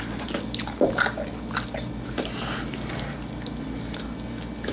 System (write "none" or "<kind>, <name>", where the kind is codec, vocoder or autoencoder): none